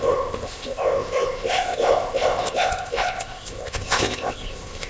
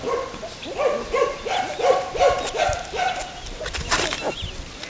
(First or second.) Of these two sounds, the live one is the second